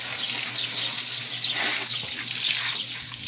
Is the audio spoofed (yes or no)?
no